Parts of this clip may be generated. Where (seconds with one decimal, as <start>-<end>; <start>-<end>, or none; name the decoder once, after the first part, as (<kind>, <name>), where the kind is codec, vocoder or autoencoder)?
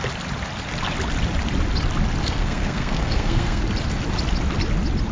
2.2-3.6 (codec, SNAC)